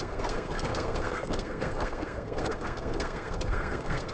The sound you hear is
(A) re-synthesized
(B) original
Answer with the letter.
A